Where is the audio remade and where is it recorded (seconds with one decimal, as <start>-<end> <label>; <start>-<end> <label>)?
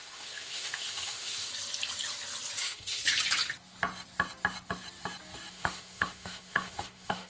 0.0-1.5 remade; 1.5-2.6 recorded; 2.6-3.0 remade; 3.0-5.5 recorded; 5.5-7.3 remade